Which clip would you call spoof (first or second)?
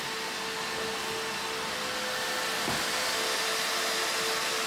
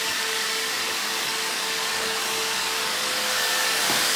second